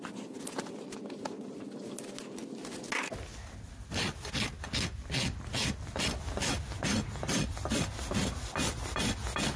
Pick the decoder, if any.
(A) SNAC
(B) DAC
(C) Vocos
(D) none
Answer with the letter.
D